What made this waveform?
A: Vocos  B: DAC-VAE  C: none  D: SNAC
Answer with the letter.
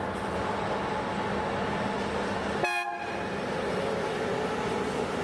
C